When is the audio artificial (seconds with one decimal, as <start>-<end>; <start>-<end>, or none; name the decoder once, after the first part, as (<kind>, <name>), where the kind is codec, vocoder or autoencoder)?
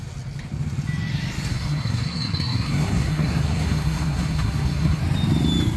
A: 1.5-5.0 (codec, SNAC)